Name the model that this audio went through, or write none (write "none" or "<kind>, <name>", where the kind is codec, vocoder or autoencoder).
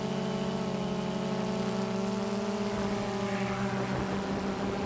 none